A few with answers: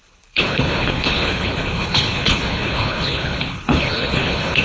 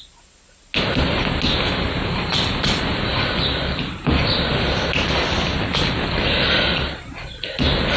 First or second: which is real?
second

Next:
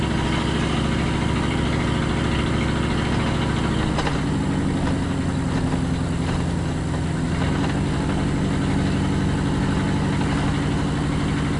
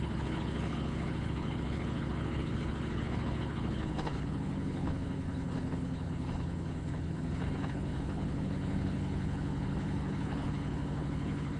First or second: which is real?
first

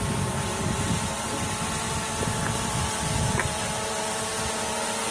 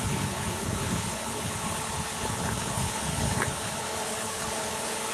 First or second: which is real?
first